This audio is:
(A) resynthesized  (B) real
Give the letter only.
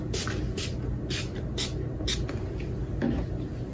B